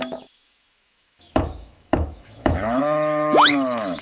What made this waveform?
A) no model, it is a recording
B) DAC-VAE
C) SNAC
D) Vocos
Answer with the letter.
B